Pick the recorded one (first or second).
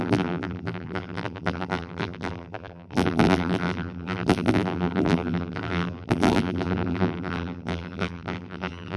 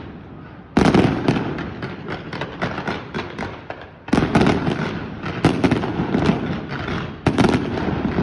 second